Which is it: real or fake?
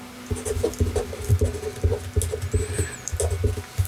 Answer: real